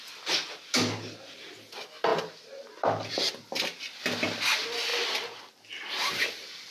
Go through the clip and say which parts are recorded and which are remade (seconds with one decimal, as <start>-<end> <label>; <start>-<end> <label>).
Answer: 0.0-6.7 recorded